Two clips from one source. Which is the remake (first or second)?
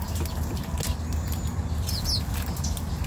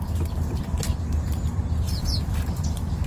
second